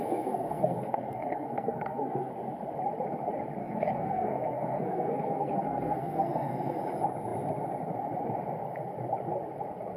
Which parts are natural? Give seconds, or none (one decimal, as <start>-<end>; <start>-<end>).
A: 2.3-3.6; 6.8-10.0

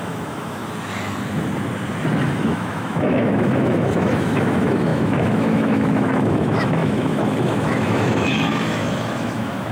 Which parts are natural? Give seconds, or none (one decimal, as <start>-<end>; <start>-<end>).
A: 0.6-2.2

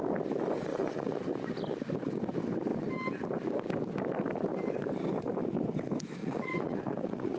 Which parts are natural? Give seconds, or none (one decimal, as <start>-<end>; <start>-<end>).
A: 0.0-0.7; 1.2-6.2